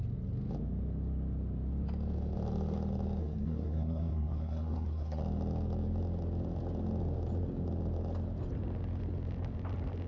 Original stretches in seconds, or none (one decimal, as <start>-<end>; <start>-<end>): 0.0-3.2; 5.2-10.1